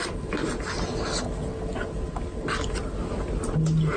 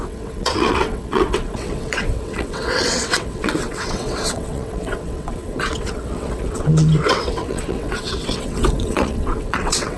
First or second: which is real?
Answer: first